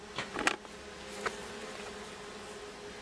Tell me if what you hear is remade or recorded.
recorded